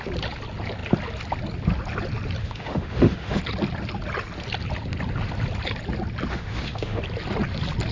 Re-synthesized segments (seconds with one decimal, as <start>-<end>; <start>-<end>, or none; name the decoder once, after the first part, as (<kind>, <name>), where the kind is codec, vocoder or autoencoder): 2.4-3.4 (autoencoder, DAC-VAE); 6.3-7.0